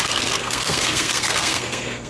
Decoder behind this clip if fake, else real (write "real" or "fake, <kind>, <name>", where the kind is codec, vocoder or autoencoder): fake, codec, SNAC